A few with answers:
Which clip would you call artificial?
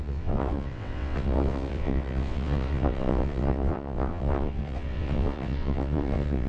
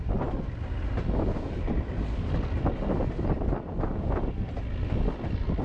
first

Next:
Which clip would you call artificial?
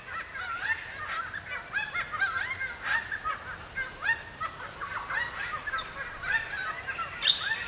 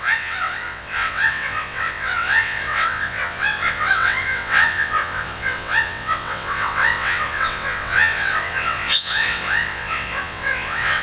second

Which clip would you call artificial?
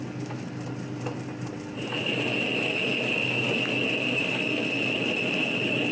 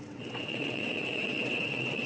second